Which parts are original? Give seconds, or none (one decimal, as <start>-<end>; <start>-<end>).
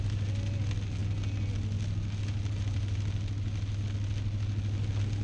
0.0-5.2